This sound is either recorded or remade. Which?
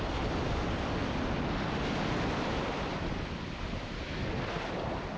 recorded